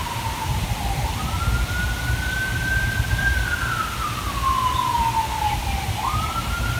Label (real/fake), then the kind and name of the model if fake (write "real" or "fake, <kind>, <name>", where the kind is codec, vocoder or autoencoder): real